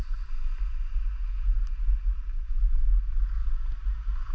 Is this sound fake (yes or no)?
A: no